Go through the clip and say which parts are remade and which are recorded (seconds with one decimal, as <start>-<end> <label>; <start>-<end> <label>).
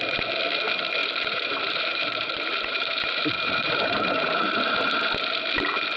0.0-1.0 recorded; 1.0-4.6 remade; 4.6-6.0 recorded